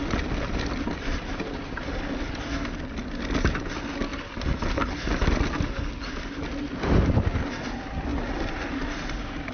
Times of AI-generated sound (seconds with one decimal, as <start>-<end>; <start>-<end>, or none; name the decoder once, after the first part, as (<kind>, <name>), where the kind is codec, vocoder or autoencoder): none